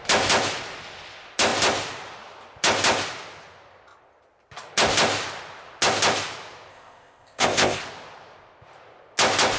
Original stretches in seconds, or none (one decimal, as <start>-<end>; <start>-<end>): 0.0-6.7; 7.8-9.6